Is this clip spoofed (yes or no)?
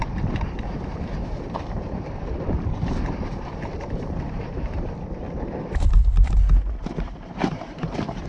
yes